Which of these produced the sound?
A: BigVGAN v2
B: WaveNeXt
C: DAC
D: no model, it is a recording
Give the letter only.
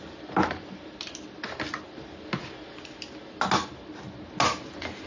D